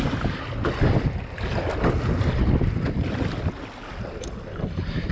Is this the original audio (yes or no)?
yes